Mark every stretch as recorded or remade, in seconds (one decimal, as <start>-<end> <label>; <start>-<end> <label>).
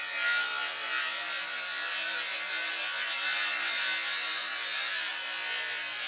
0.0-6.1 recorded